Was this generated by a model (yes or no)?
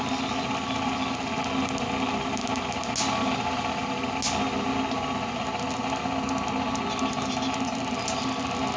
no